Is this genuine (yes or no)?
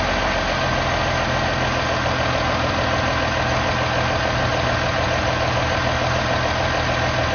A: yes